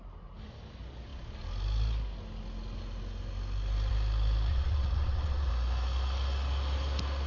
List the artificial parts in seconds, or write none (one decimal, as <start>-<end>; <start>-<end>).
4.5-5.5